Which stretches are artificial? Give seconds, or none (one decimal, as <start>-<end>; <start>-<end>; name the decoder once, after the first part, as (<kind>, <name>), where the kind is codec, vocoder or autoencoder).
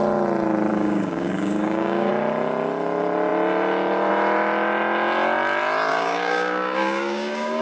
0.7-2.1 (codec, DAC); 5.9-7.6